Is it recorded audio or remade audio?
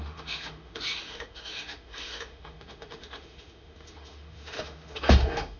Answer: remade